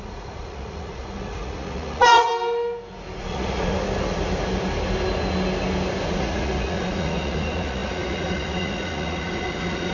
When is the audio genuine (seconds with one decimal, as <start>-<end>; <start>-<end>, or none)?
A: 2.3-3.2; 3.7-6.1